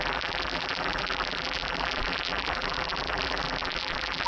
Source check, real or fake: fake